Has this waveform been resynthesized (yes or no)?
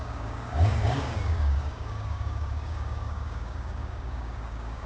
yes